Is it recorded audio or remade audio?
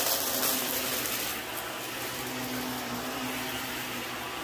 recorded